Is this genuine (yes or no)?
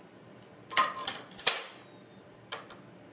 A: yes